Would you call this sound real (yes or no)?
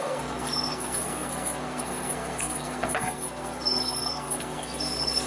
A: no